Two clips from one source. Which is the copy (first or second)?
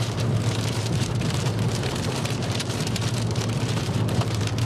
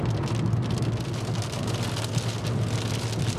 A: first